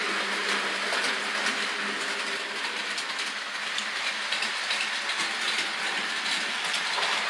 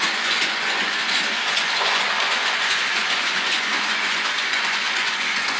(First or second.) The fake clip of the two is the second